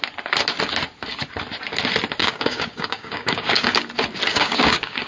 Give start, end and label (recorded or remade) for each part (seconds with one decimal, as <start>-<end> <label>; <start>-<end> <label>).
0.0-2.2 recorded; 2.2-3.8 remade; 3.8-4.3 recorded; 4.3-5.1 remade